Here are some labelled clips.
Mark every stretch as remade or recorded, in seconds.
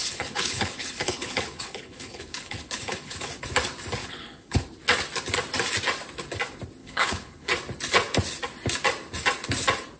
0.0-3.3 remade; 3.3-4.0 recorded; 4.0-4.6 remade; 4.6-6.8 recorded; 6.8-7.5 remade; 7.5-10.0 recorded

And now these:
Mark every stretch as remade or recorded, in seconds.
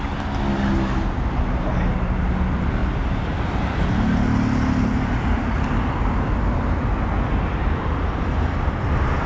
0.0-9.3 recorded